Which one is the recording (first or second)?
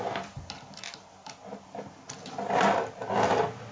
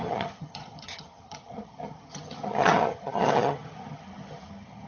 first